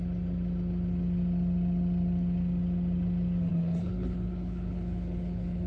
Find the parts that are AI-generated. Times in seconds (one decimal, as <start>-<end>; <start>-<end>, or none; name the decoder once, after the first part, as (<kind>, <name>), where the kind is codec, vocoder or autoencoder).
3.5-5.7 (codec, HILCodec)